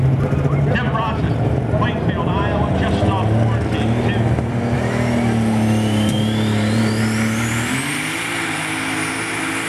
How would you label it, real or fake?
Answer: real